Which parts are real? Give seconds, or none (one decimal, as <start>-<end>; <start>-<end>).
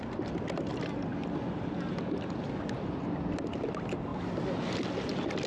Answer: 0.0-5.5